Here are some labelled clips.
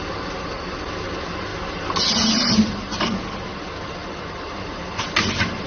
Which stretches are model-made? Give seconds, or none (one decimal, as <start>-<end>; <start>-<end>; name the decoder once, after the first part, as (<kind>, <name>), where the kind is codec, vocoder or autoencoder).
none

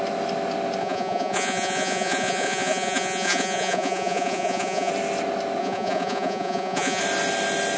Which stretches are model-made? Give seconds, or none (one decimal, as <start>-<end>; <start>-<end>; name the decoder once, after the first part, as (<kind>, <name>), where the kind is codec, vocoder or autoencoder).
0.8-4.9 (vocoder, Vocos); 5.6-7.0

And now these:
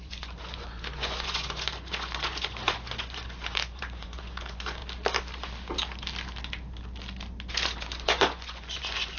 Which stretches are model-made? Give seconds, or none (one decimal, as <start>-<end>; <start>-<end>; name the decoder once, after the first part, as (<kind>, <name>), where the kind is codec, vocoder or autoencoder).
0.0-4.8 (vocoder, Vocos); 7.5-9.2

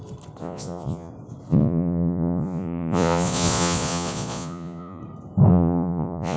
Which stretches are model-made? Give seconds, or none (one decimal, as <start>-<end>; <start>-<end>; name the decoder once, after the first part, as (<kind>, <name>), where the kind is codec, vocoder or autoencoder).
0.4-1.1 (vocoder, Vocos); 1.5-5.0; 5.5-6.4

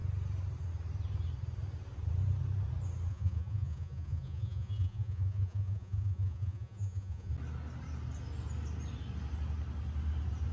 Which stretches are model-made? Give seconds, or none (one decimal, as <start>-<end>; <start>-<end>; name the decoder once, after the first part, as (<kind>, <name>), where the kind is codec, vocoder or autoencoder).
3.1-7.3 (vocoder, Vocos)

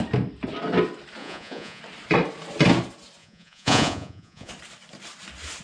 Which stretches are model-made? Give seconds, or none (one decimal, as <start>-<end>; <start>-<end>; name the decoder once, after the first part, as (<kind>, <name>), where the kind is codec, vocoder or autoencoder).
1.2-1.8 (vocoder, Vocos); 3.2-4.5

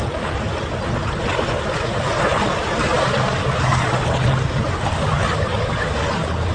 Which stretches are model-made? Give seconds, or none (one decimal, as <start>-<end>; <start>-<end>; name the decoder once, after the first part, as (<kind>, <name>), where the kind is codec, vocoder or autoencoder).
none

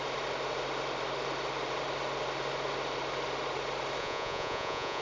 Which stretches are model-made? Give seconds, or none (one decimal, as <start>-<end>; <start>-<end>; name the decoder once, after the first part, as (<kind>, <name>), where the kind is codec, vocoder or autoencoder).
4.0-5.0 (vocoder, Vocos)